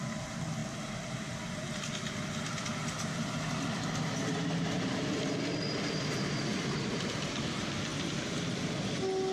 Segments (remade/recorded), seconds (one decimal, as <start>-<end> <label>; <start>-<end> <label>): 0.0-9.3 recorded